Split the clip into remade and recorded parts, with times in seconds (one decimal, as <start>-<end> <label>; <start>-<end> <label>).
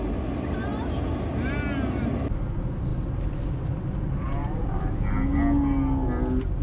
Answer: 0.0-4.4 recorded; 4.4-4.9 remade; 4.9-6.6 recorded